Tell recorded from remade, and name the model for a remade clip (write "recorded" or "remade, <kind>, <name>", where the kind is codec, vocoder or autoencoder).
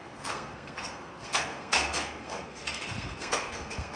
remade, codec, SNAC